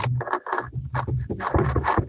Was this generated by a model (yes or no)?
yes